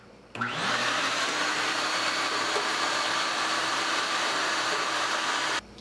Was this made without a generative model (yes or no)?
no